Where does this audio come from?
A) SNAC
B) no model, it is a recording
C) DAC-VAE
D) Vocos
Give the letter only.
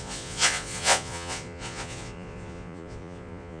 D